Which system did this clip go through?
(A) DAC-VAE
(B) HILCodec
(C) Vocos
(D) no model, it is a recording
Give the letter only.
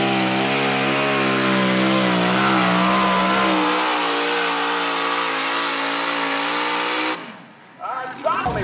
D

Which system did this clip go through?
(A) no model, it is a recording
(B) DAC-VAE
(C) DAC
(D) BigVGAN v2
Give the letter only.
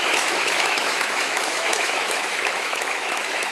B